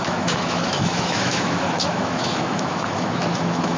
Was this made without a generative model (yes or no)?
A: no